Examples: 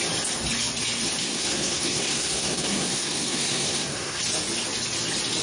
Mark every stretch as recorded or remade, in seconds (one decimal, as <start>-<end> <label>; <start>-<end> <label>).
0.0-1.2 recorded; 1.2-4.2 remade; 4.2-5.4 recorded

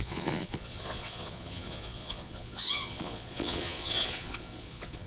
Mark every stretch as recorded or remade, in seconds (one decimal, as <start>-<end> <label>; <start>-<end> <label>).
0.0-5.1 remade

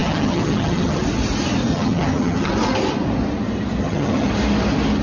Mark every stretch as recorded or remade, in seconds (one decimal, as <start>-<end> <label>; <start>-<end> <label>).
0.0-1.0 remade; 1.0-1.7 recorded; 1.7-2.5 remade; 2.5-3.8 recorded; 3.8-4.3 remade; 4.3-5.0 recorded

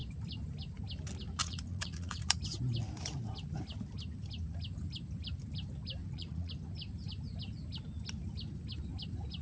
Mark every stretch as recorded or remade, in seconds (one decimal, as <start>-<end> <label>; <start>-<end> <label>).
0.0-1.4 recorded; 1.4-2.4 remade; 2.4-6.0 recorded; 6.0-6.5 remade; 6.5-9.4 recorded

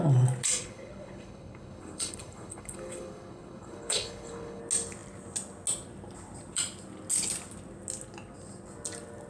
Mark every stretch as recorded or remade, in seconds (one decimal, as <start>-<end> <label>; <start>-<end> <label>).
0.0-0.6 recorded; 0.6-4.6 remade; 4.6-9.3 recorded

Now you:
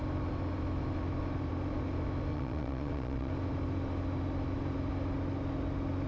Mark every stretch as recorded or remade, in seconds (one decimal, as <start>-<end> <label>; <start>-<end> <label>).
0.0-2.3 recorded; 2.3-3.3 remade; 3.3-6.1 recorded

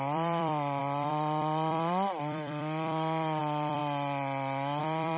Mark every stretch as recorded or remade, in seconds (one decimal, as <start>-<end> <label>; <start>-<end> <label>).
0.0-3.8 remade; 3.8-4.8 recorded; 4.8-5.2 remade

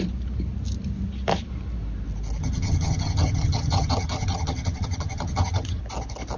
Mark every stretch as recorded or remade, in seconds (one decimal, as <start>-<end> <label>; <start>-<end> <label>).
0.0-2.4 recorded; 2.4-5.8 remade; 5.8-6.4 recorded